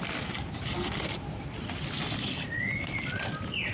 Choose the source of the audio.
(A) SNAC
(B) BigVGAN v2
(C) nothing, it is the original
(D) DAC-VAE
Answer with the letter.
C